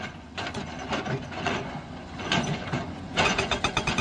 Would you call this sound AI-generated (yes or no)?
yes